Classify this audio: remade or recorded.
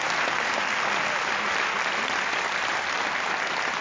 recorded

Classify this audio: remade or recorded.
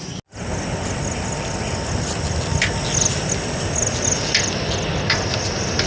recorded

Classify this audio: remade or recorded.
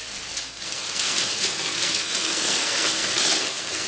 remade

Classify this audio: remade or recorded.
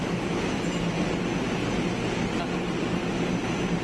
recorded